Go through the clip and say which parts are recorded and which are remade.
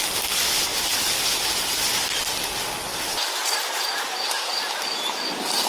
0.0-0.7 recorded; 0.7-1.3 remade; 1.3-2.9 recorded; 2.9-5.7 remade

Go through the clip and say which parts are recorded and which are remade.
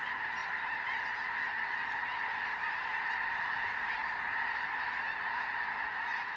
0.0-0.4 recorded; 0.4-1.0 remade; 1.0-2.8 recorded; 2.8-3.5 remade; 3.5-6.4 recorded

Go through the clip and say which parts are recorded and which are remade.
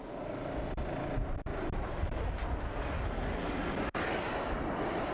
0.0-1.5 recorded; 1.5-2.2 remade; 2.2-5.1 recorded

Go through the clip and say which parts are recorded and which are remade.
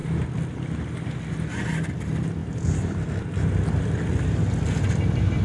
0.0-1.9 recorded; 1.9-5.4 remade